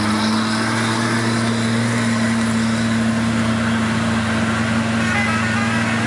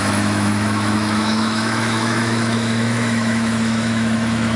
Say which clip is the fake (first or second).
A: second